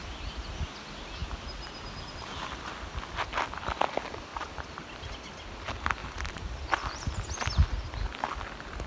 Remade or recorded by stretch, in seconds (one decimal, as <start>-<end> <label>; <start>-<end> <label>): 0.0-4.3 recorded; 4.3-5.1 remade; 5.1-6.0 recorded; 6.0-6.7 remade; 6.7-8.9 recorded

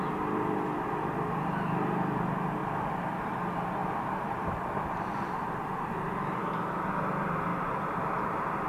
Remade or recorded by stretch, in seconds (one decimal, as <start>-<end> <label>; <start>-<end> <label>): 0.0-2.6 recorded; 2.6-3.3 remade; 3.3-3.8 recorded; 3.8-6.4 remade; 6.4-7.5 recorded; 7.5-8.0 remade; 8.0-8.7 recorded

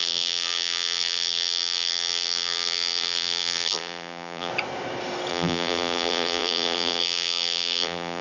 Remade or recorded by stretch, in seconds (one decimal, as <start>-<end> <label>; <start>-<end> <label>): 0.0-4.5 remade; 4.5-5.3 recorded; 5.3-8.2 remade

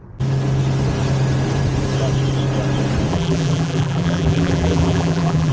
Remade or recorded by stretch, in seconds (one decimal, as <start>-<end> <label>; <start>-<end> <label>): 0.0-3.1 recorded; 3.1-5.5 remade

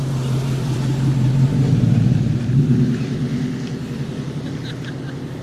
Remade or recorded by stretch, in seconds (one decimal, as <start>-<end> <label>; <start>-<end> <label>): 0.0-3.3 remade; 3.3-5.4 recorded